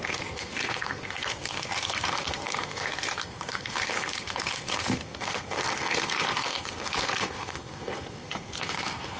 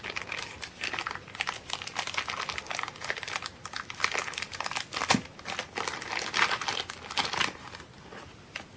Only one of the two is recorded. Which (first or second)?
second